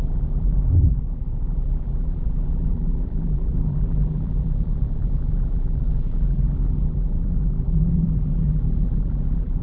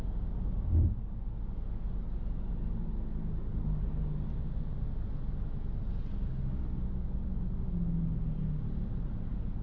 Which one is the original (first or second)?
second